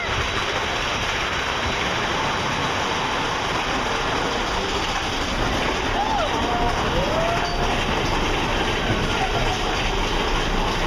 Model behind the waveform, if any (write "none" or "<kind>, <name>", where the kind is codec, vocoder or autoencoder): none